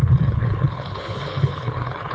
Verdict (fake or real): fake